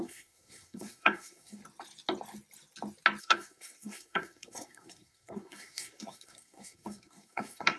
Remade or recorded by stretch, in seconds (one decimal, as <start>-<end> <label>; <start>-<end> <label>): 0.0-1.6 remade; 1.6-3.2 recorded; 3.2-7.8 remade

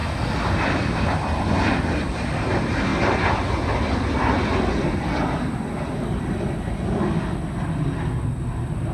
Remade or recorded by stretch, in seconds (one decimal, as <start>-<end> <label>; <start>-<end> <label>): 0.0-8.9 recorded

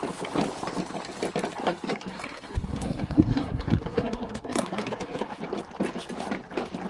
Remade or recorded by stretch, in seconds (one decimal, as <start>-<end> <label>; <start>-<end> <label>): 0.0-1.6 recorded; 1.6-5.4 remade; 5.4-6.9 recorded

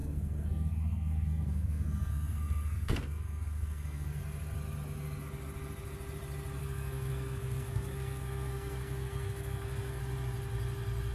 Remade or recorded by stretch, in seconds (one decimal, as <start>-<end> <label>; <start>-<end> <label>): 0.0-4.2 remade; 4.2-6.6 recorded; 6.6-10.0 remade; 10.0-11.1 recorded

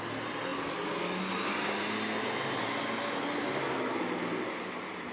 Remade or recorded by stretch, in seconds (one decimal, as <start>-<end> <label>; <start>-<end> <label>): 0.0-5.1 recorded

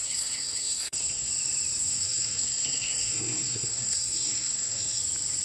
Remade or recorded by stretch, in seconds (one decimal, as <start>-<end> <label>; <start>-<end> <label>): 0.0-1.3 remade; 1.3-1.8 recorded; 1.8-5.0 remade; 5.0-5.4 recorded